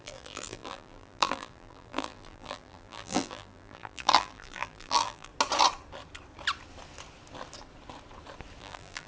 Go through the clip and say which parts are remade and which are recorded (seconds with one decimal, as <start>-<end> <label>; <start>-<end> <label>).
0.0-5.3 remade; 5.3-8.6 recorded; 8.6-9.1 remade